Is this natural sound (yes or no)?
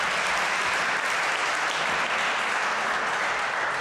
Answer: yes